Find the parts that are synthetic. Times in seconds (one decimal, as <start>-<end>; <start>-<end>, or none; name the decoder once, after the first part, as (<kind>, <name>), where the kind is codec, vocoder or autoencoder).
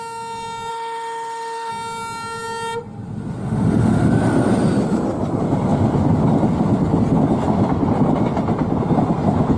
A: 0.7-1.7 (autoencoder, DAC-VAE); 3.4-4.1